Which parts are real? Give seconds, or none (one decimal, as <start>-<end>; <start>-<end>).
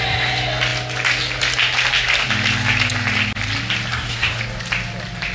0.0-3.9; 4.4-5.3